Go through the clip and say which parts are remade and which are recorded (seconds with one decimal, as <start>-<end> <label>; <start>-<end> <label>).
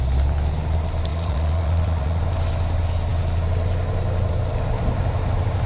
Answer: 0.0-1.1 recorded; 1.1-2.2 remade; 2.2-5.7 recorded